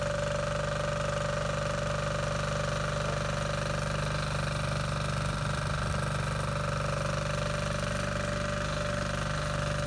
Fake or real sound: real